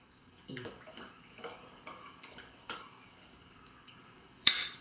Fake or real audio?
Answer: fake